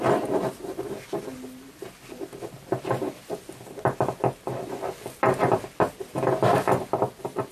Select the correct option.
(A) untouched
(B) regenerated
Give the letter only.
A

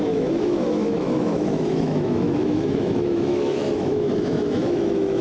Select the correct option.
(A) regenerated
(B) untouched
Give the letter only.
A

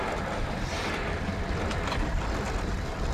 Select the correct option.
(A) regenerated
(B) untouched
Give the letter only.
B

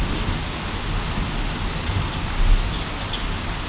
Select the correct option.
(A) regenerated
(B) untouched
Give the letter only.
B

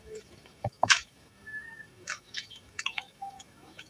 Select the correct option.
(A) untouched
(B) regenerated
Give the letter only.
B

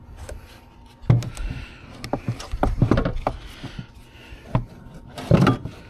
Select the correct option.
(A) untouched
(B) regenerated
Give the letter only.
A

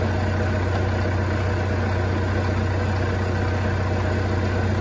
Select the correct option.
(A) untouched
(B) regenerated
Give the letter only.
A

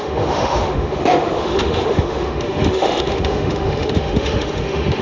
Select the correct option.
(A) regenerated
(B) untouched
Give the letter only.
A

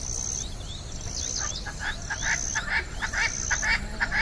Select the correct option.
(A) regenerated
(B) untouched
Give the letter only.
B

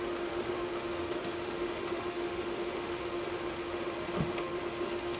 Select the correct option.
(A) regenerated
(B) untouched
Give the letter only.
A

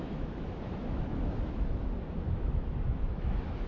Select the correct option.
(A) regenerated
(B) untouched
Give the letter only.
A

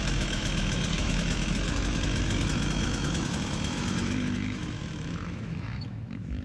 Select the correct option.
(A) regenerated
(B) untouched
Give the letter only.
A